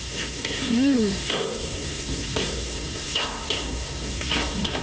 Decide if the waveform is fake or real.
fake